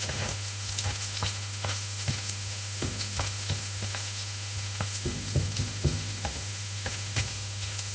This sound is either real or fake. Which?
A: fake